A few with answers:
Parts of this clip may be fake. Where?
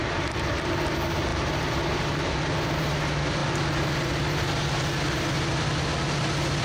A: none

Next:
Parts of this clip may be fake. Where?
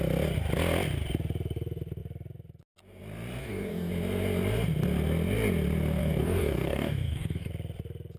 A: 3.4-3.9 (codec, DAC); 6.0-7.5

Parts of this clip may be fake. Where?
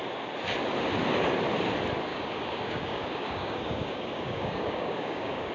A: 2.1-5.5 (codec, DAC)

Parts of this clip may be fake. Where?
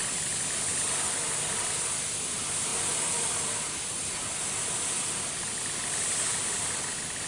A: none